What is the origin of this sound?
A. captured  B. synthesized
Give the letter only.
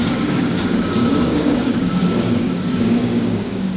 B